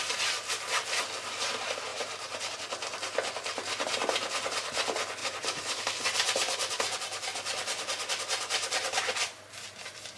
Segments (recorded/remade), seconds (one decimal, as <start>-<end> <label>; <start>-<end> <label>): 0.0-1.9 recorded; 1.9-2.5 remade; 2.5-5.2 recorded; 5.2-5.9 remade; 5.9-10.2 recorded